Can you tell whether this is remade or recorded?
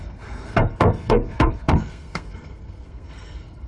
remade